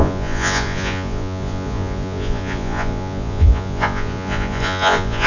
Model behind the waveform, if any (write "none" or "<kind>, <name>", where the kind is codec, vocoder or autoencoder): vocoder, Vocos